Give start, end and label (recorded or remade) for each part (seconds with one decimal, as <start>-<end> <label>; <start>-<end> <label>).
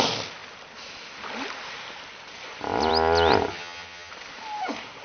0.0-3.5 recorded; 3.5-4.1 remade; 4.1-5.0 recorded